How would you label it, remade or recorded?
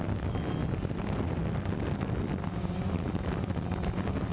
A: recorded